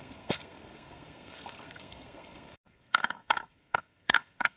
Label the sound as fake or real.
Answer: fake